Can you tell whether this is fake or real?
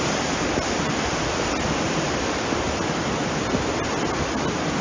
real